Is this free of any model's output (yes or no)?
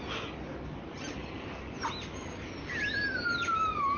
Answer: yes